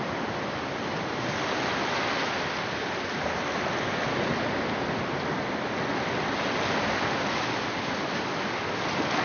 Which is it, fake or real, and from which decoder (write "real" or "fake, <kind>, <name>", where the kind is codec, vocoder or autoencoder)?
real